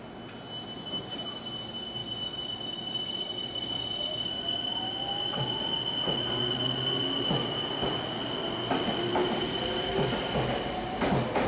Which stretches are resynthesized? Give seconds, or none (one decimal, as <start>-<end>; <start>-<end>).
2.0-4.7; 9.1-10.1